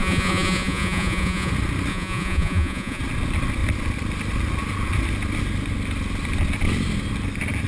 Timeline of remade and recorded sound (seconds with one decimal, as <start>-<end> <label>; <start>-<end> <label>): 0.0-1.5 remade; 1.5-1.9 recorded; 1.9-3.0 remade; 3.0-7.7 recorded